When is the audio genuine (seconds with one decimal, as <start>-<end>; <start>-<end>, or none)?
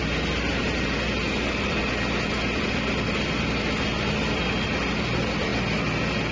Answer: 0.0-6.3